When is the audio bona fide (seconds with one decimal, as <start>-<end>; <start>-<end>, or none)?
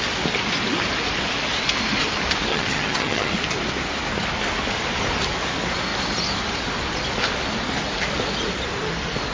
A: 0.0-2.5; 3.3-9.3